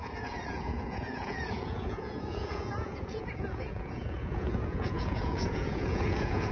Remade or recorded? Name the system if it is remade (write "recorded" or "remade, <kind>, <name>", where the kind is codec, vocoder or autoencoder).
remade, vocoder, Vocos